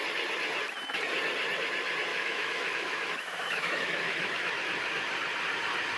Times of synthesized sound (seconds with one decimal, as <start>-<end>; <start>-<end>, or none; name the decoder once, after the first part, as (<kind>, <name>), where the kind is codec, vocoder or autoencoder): 2.1-4.5 (autoencoder, DAC-VAE)